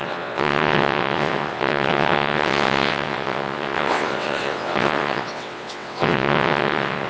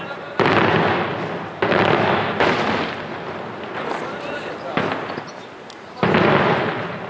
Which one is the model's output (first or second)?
first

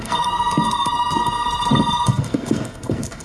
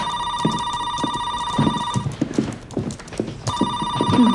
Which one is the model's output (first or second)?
first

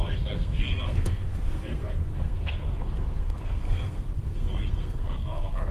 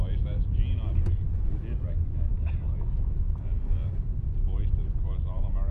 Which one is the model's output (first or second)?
first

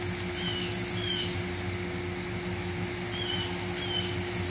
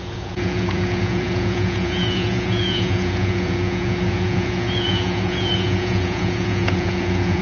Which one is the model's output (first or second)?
second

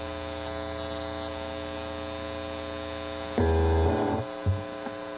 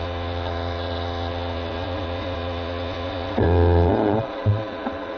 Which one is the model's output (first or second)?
second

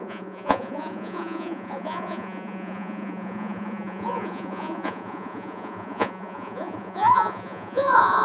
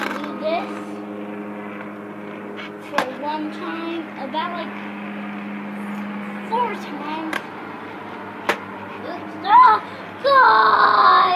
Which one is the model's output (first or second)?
first